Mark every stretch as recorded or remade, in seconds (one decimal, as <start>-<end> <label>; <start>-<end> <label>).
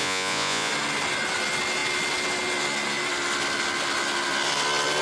0.0-0.7 remade; 0.7-5.0 recorded